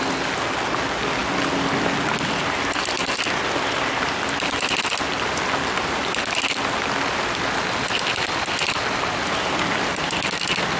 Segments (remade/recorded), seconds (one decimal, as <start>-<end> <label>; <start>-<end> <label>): 0.0-10.8 recorded